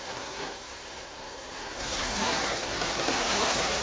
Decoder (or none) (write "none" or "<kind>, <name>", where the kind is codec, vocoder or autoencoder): codec, SNAC